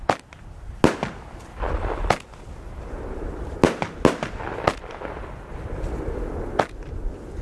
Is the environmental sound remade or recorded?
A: recorded